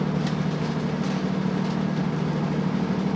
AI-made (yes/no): no